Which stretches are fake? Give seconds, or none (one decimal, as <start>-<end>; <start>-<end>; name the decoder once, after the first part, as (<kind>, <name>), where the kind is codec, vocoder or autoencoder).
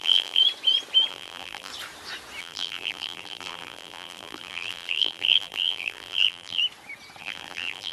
0.0-0.4 (vocoder, BigVGAN v2); 1.1-1.7; 2.4-6.6; 7.2-7.9